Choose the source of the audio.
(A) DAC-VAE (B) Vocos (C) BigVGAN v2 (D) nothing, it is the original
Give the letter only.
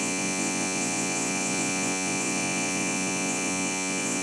B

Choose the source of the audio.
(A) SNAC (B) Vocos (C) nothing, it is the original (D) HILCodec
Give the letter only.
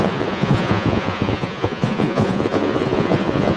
B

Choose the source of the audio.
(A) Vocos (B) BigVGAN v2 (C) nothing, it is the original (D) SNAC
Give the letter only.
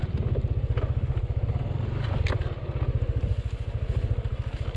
C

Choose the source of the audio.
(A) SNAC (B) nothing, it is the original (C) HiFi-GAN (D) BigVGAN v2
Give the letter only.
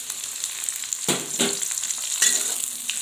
B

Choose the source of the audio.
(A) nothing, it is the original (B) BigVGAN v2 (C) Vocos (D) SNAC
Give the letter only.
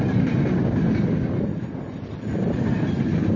A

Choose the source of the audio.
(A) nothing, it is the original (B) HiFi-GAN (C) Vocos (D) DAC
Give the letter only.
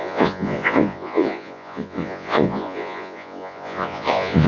C